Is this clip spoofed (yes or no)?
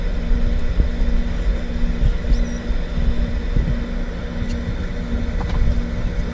no